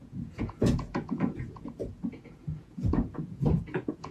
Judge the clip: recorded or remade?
remade